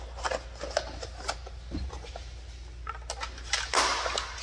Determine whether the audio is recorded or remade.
recorded